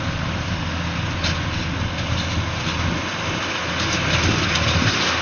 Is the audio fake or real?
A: real